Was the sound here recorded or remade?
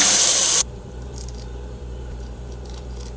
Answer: remade